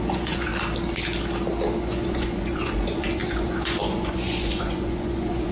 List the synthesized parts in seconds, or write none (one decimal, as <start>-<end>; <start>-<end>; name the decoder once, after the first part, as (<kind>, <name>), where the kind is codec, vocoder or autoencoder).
0.0-0.5 (vocoder, Vocos); 1.8-5.5